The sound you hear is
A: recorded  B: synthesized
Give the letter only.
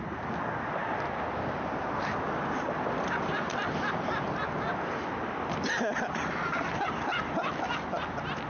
A